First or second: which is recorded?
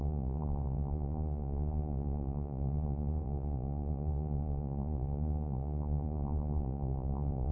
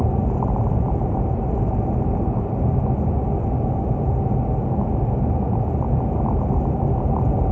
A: second